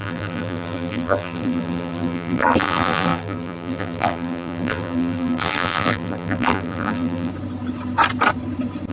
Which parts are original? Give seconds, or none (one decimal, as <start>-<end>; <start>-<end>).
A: 7.3-8.9